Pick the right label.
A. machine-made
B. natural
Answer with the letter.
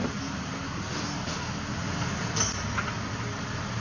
B